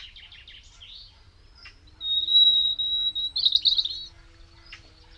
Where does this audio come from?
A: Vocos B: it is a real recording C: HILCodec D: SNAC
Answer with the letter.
B